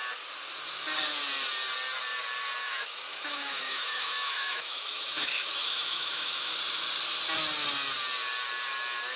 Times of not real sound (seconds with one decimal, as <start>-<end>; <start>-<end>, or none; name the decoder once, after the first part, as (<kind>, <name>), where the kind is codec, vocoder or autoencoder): 2.6-6.5 (autoencoder, DAC-VAE)